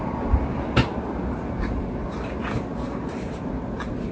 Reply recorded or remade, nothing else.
recorded